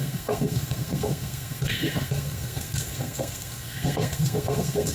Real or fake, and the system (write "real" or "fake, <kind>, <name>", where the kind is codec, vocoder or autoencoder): fake, codec, SNAC